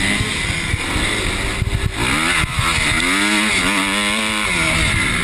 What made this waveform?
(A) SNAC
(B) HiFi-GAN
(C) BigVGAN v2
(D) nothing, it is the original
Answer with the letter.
D